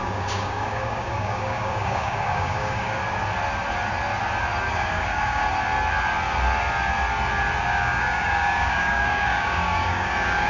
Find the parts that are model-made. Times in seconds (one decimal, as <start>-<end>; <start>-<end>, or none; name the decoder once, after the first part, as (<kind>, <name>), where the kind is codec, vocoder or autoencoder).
0.0-3.0 (codec, DAC); 4.7-5.4; 7.6-10.5